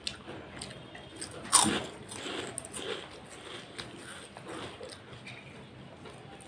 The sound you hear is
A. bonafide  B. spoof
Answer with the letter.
A